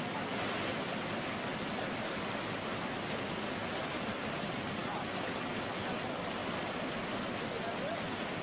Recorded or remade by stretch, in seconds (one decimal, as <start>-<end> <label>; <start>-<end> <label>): 0.0-8.4 recorded